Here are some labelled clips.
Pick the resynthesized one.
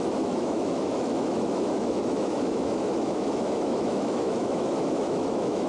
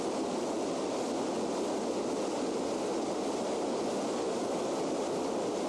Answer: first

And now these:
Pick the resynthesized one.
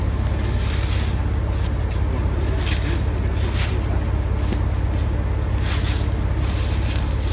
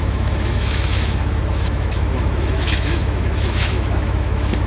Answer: second